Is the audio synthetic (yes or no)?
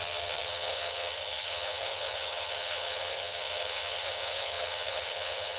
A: yes